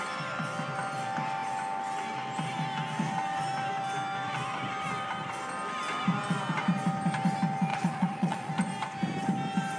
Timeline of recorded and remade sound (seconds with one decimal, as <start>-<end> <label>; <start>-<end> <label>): 0.0-7.7 recorded; 7.7-8.5 remade; 8.5-9.8 recorded